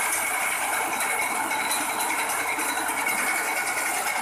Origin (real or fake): real